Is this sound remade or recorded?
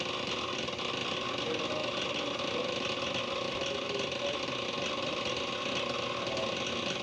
recorded